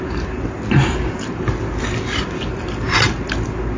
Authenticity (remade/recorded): recorded